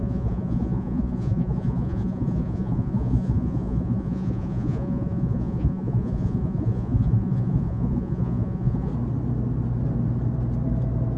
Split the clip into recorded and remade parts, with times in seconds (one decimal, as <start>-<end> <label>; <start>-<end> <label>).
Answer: 0.0-8.9 remade; 8.9-11.2 recorded